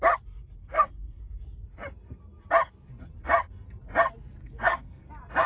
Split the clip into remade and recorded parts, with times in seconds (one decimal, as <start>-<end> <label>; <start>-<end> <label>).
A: 0.0-0.6 recorded; 0.6-1.2 remade; 1.2-4.4 recorded; 4.4-5.1 remade; 5.1-5.5 recorded